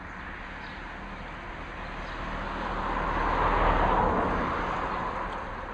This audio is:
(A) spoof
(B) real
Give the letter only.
B